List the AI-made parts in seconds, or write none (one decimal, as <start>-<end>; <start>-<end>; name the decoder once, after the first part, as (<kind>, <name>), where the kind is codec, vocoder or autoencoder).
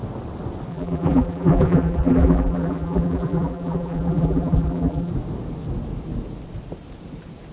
0.7-5.1 (vocoder, BigVGAN v2)